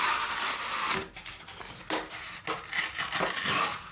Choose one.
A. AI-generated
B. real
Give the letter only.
B